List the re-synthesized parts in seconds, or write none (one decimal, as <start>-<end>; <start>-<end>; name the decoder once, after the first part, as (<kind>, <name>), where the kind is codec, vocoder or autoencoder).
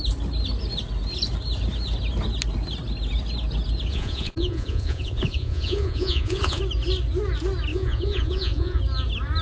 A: 3.9-6.6 (vocoder, Vocos); 7.7-8.8